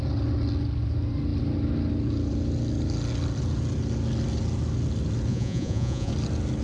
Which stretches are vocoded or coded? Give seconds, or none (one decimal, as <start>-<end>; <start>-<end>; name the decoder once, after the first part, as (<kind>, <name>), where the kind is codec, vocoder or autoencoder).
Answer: 5.3-6.1 (vocoder, Vocos)